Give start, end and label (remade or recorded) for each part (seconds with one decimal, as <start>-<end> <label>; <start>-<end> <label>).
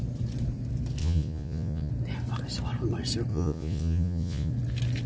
0.0-1.0 recorded; 1.0-1.9 remade; 1.9-3.3 recorded; 3.3-4.5 remade; 4.5-5.1 recorded